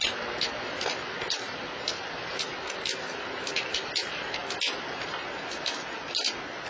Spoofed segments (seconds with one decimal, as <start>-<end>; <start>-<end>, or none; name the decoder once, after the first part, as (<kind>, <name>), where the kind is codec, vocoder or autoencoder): none